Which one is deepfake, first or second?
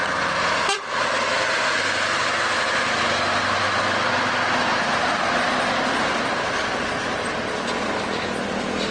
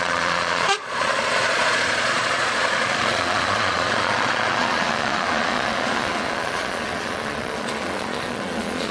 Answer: second